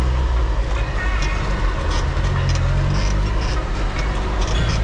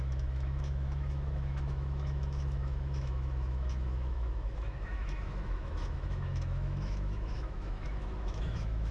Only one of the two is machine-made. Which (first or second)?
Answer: second